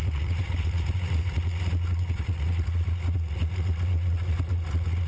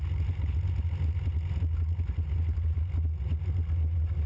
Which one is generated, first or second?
first